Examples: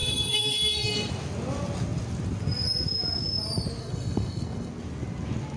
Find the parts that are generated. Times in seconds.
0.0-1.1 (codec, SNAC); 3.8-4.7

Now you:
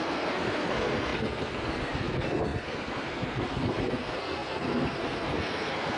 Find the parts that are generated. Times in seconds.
0.0-6.0 (codec, SNAC)

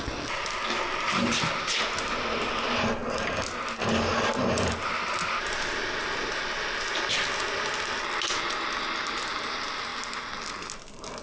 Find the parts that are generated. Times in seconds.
none

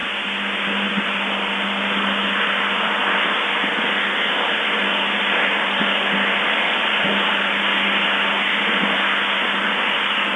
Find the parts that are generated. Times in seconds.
none

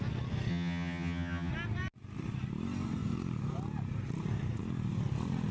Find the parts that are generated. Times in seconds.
0.5-1.5 (vocoder, HiFi-GAN)